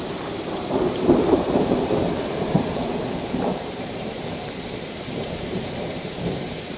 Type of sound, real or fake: fake